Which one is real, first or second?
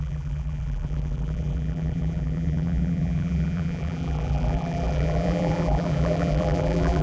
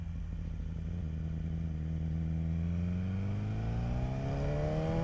second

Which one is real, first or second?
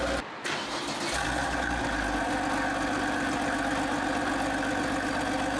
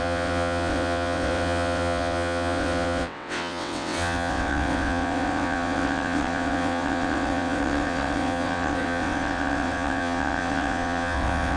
first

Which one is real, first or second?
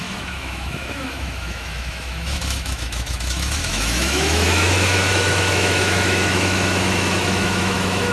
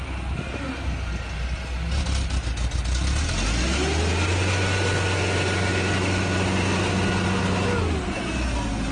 second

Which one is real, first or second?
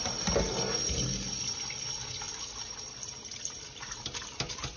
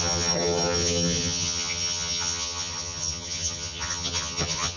first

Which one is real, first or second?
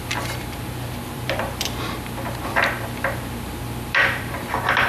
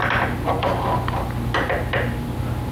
second